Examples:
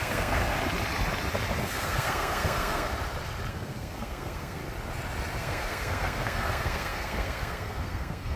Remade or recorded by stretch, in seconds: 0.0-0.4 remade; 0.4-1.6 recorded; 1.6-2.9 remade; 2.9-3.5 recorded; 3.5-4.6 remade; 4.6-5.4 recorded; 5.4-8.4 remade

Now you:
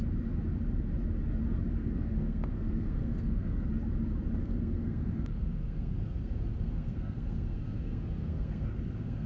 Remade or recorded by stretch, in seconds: 0.0-1.8 recorded; 1.8-3.7 remade; 3.7-4.4 recorded; 4.4-9.3 remade

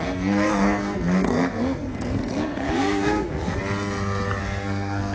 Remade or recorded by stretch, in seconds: 0.0-3.6 remade; 3.6-4.4 recorded; 4.4-5.1 remade

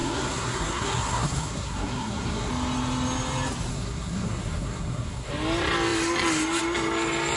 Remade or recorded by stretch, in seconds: 0.0-2.5 remade; 2.5-3.7 recorded; 3.7-5.3 remade; 5.3-7.4 recorded

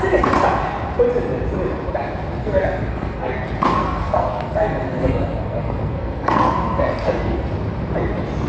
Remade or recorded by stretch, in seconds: 0.0-2.4 recorded; 2.4-3.3 remade; 3.3-3.7 recorded; 3.7-7.5 remade; 7.5-8.5 recorded

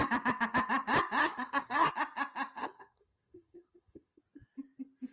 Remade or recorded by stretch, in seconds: 0.0-1.2 recorded; 1.2-1.9 remade; 1.9-2.6 recorded; 2.6-4.2 remade; 4.2-5.1 recorded

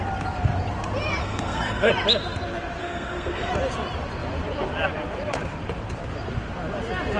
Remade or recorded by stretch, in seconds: 0.0-1.2 recorded; 1.2-1.9 remade; 1.9-2.8 recorded; 2.8-3.5 remade; 3.5-7.2 recorded